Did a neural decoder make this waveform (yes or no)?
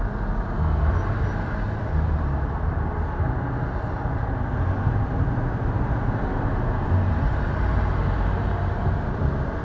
no